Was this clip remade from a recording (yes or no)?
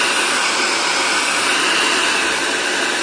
no